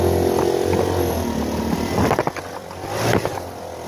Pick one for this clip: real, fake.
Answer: real